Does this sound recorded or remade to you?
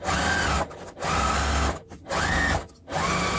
recorded